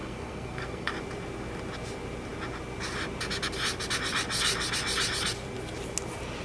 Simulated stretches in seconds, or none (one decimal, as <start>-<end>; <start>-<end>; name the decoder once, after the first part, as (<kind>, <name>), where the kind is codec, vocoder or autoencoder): 0.0-0.9 (codec, SNAC)